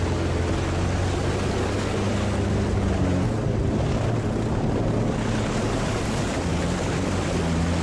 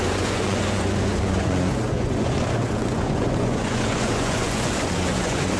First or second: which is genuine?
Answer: first